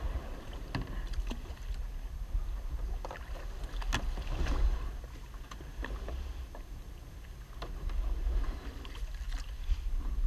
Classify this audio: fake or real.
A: real